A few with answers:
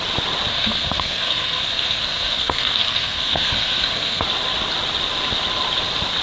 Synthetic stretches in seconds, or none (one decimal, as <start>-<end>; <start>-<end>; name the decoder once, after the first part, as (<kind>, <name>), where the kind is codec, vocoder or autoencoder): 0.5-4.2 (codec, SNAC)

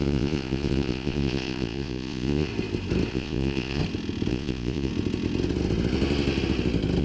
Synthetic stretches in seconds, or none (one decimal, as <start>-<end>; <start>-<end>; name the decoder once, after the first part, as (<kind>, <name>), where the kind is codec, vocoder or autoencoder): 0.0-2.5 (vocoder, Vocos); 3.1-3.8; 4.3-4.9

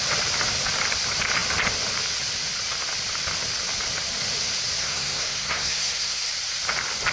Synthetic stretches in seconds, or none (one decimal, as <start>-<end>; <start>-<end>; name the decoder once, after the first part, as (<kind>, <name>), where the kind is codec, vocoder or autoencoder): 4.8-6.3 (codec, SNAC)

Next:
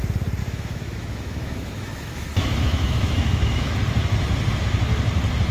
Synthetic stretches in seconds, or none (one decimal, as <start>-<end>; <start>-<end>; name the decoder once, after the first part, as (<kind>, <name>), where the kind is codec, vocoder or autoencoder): 0.4-3.7 (autoencoder, DAC-VAE)